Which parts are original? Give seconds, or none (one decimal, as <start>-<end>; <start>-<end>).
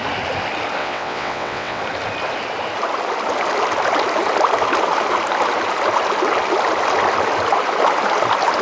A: 0.0-0.8; 1.8-8.6